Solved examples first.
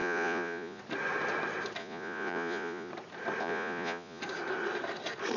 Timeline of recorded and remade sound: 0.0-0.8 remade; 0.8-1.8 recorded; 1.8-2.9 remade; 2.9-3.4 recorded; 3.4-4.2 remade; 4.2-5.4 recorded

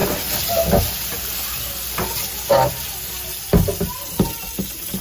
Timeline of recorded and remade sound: 0.0-5.0 recorded

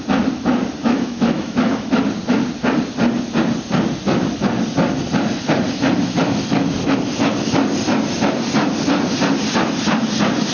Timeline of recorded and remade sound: 0.0-0.8 recorded; 0.8-1.9 remade; 1.9-10.5 recorded

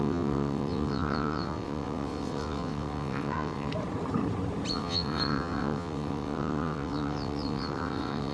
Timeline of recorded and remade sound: 0.0-3.7 remade; 3.7-4.7 recorded; 4.7-8.3 remade

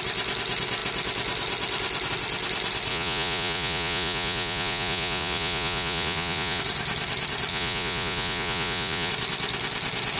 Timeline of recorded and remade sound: 0.0-2.9 recorded; 2.9-6.6 remade; 6.6-7.5 recorded; 7.5-9.1 remade; 9.1-10.2 recorded

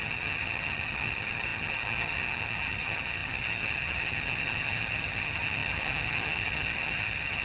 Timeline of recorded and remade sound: 0.0-7.4 remade